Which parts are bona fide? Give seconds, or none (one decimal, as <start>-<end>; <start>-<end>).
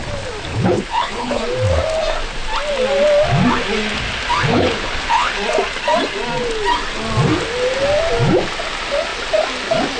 0.0-0.5; 1.4-4.5; 5.3-10.0